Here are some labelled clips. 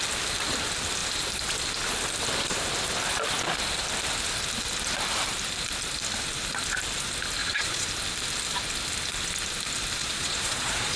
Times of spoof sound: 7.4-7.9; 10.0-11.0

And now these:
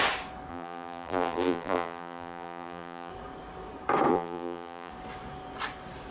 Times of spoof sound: 0.5-3.1; 4.1-4.9